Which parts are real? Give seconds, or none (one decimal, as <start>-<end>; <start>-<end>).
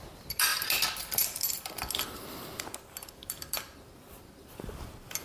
0.0-5.2